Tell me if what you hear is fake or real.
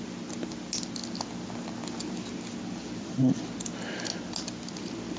real